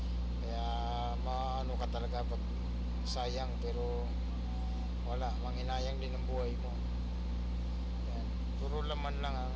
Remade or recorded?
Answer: recorded